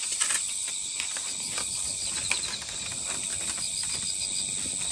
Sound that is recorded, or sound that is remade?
recorded